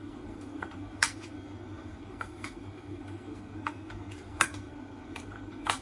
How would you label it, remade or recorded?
remade